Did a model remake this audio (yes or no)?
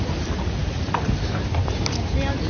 no